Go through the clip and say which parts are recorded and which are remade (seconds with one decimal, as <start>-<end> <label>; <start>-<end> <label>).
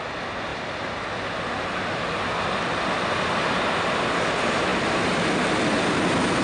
0.0-6.4 recorded